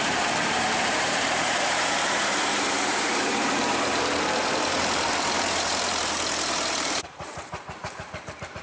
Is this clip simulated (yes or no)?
yes